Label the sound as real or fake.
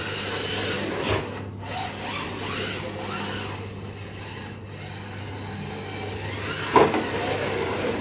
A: real